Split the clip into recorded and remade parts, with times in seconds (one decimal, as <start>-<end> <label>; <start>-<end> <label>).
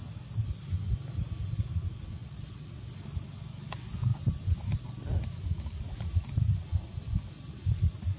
0.0-2.2 recorded; 2.2-2.8 remade; 2.8-8.2 recorded